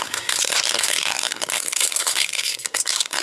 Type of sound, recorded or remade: remade